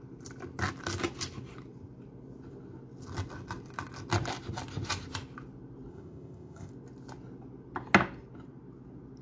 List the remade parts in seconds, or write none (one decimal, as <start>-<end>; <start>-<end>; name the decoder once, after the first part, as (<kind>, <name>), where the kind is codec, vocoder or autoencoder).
5.9-6.7 (codec, ZipCodec)

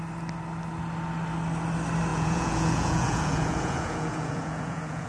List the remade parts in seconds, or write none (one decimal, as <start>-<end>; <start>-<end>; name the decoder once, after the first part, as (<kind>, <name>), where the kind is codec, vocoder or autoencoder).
2.1-5.1 (vocoder, Vocos)

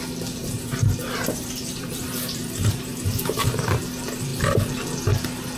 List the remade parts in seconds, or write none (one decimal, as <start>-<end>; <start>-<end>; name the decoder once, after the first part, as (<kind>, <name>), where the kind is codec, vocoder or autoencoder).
0.4-3.8 (vocoder, BigVGAN v2)

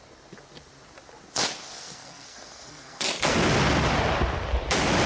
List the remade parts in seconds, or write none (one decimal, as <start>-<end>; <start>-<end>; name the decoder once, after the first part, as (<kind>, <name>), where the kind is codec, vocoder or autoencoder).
1.7-3.4 (codec, SNAC)

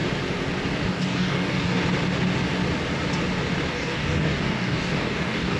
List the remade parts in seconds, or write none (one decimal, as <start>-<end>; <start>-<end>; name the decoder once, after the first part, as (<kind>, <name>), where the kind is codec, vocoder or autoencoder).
0.9-1.8 (codec, DAC); 3.7-5.6

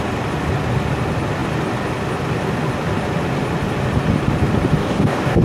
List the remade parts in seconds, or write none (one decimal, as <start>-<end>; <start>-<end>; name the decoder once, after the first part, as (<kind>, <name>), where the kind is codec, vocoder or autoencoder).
4.8-5.4 (codec, DAC)

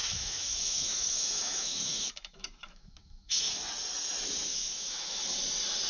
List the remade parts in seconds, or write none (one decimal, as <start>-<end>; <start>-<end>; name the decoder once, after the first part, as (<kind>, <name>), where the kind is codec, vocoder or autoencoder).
0.0-3.5 (autoencoder, DAC-VAE); 4.5-5.2

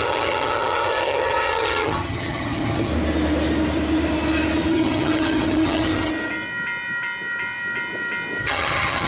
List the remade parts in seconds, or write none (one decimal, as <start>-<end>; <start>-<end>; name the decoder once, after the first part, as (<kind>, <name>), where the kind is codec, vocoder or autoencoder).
0.0-2.9 (vocoder, HiFi-GAN); 4.7-6.1; 8.4-9.1